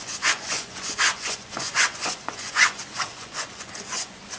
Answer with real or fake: fake